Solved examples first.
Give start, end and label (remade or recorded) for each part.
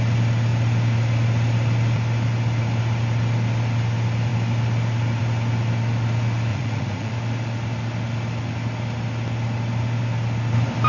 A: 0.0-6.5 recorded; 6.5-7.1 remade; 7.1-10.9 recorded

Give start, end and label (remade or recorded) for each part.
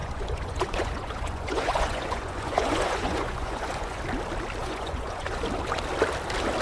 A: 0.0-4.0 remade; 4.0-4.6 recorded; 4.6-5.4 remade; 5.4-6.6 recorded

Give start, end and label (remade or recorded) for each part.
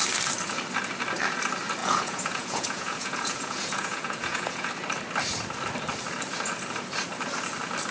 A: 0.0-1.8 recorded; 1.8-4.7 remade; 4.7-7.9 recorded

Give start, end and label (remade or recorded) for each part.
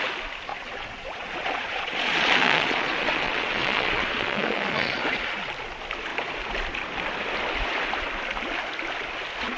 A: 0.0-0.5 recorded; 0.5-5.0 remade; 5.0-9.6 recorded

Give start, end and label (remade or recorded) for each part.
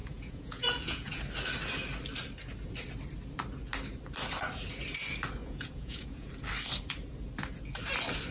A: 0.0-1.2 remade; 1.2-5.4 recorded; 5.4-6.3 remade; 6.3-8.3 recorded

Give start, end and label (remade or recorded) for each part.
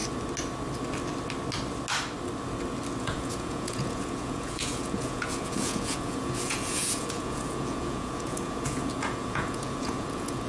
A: 0.0-3.0 recorded; 3.0-10.5 remade